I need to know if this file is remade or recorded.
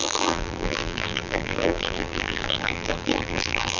remade